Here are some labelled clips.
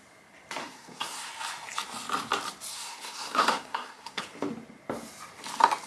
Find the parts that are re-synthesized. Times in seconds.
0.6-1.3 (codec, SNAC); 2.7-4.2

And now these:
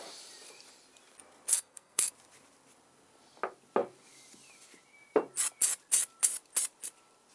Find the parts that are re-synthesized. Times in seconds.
1.5-2.1 (codec, SNAC)

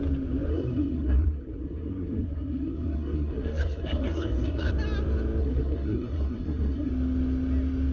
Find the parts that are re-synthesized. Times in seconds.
0.5-4.7 (codec, SNAC); 5.4-6.9